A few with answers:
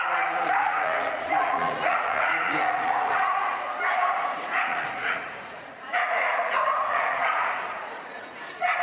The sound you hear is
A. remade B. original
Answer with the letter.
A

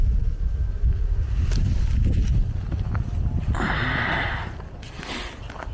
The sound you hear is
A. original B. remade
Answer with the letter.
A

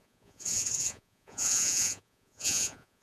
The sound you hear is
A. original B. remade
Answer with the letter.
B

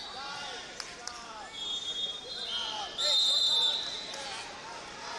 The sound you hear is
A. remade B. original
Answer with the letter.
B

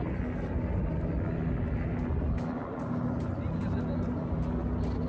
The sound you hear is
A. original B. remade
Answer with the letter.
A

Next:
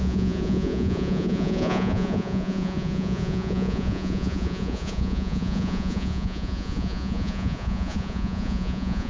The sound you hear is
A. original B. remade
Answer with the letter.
B